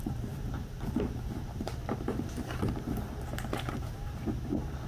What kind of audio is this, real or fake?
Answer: fake